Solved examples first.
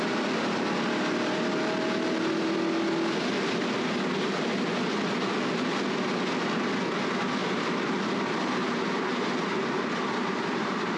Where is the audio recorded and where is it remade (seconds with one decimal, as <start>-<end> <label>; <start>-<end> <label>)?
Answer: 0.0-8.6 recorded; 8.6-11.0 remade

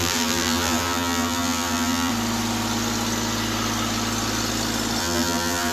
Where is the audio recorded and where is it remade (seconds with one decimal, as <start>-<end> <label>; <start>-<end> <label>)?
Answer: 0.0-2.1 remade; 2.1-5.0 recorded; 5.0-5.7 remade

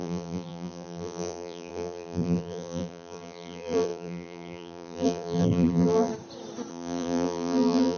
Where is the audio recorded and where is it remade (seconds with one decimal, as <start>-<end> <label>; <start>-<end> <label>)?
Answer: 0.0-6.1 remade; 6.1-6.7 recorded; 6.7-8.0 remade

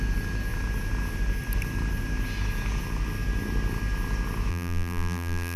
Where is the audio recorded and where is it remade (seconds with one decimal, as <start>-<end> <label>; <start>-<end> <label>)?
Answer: 0.0-4.5 recorded; 4.5-5.6 remade